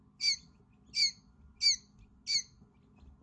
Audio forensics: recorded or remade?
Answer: recorded